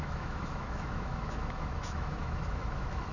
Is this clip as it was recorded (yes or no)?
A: no